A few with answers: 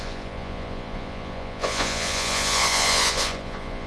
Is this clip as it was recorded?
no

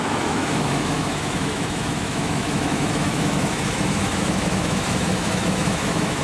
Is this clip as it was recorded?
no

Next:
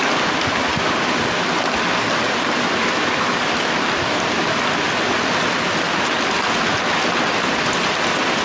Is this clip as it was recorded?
yes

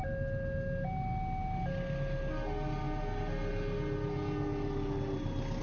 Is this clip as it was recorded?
yes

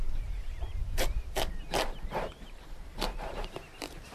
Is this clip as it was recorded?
no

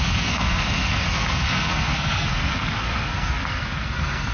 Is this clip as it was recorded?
no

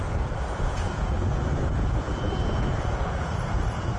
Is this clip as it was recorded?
no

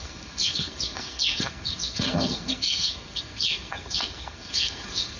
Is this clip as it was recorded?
no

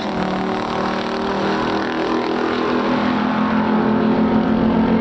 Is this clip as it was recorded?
yes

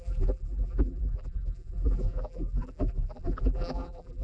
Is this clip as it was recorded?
no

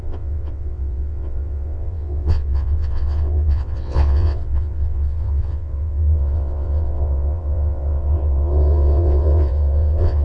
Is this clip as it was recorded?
no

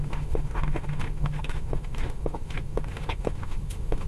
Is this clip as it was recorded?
no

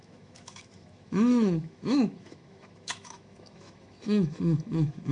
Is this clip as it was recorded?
no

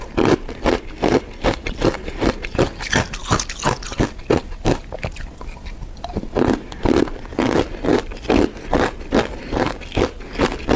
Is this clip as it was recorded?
yes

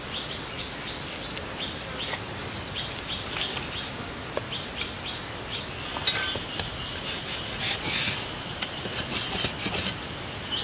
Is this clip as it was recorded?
yes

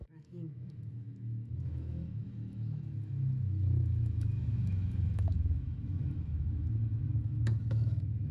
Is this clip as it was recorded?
no